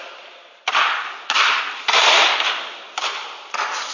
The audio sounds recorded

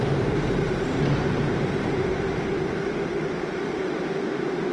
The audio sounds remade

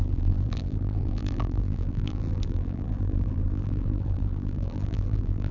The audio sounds remade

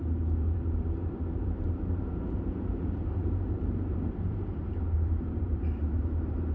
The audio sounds remade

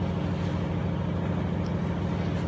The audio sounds recorded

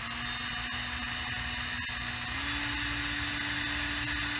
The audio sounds recorded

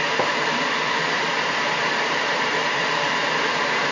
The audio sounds remade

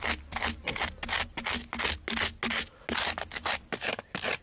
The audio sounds recorded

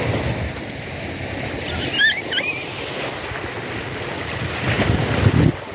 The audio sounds recorded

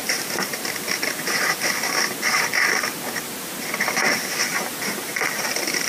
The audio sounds remade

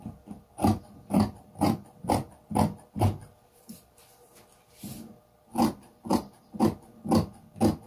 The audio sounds remade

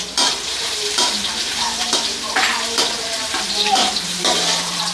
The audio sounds remade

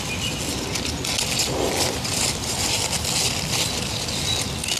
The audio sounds recorded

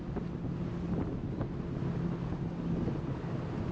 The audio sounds recorded